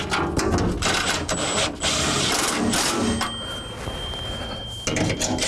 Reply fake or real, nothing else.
real